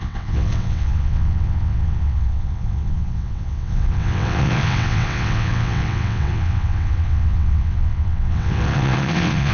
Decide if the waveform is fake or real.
fake